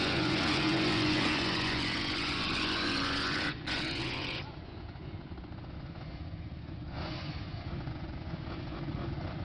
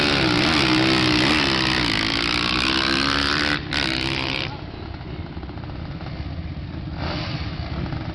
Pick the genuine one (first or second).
second